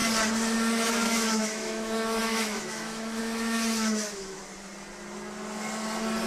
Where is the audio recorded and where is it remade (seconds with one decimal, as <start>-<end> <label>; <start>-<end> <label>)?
0.0-0.9 recorded; 0.9-4.4 remade; 4.4-6.3 recorded